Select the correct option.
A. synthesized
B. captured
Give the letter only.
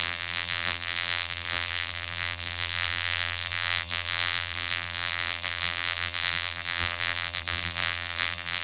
A